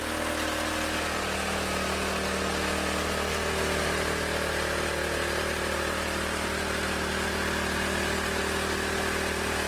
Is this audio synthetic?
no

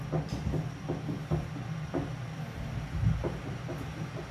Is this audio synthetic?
no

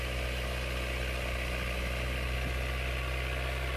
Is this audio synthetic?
no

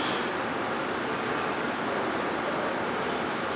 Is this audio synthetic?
no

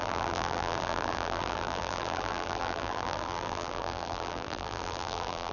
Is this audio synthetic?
yes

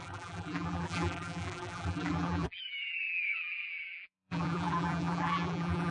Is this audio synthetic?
yes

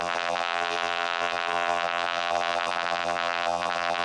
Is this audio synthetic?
yes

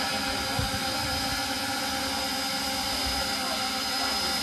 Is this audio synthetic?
yes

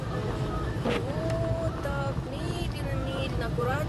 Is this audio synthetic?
yes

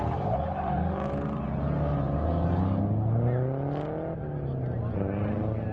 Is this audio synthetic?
no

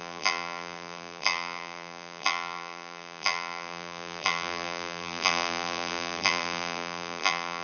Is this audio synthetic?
yes